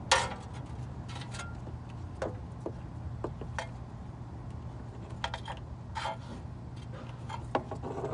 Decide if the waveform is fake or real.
real